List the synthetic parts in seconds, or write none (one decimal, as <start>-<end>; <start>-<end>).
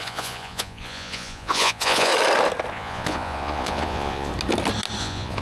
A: 0.0-2.1; 2.7-4.3; 5.0-5.4